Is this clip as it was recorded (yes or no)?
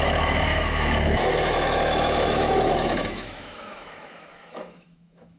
no